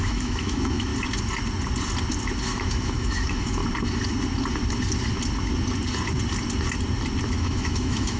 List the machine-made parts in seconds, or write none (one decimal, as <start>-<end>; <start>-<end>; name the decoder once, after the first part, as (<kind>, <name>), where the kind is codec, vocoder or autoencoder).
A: 0.0-0.9 (autoencoder, DAC-VAE); 2.4-3.6; 7.2-8.2